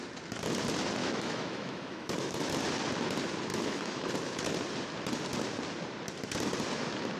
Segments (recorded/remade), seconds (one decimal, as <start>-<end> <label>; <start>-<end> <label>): 0.0-1.0 recorded; 1.0-2.5 remade; 2.5-3.5 recorded; 3.5-4.1 remade; 4.1-7.2 recorded